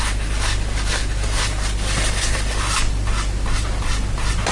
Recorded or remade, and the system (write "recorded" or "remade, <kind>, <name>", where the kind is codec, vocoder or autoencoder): recorded